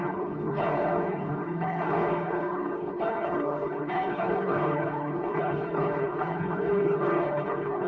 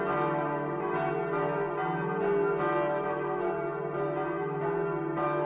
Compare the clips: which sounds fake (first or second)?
first